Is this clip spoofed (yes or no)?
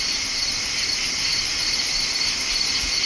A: no